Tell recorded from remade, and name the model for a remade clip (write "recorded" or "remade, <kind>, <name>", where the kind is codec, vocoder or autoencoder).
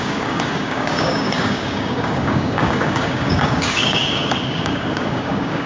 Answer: remade, codec, DAC